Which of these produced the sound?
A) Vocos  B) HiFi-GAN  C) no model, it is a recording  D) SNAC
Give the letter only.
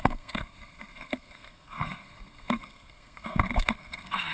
D